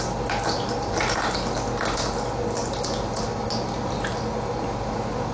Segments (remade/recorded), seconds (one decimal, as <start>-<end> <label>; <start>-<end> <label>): 0.0-5.3 recorded